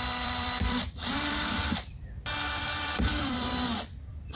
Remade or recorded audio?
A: remade